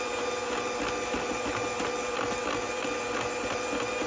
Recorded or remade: recorded